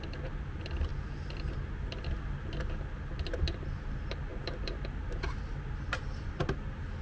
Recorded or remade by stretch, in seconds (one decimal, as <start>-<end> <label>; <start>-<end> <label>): 0.0-7.0 recorded